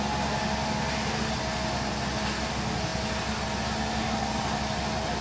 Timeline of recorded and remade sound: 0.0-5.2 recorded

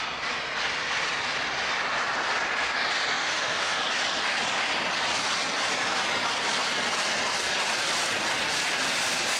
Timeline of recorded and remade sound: 0.0-3.2 recorded; 3.2-3.8 remade; 3.8-9.4 recorded